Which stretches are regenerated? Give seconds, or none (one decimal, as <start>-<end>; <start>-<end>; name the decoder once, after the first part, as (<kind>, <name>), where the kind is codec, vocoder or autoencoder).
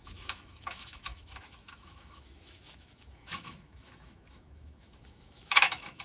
0.0-6.0 (autoencoder, DAC-VAE)